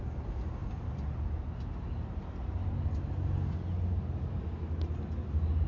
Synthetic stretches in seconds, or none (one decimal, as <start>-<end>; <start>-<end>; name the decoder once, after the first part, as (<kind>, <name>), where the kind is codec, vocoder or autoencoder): none